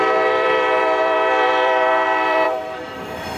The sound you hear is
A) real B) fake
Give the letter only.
B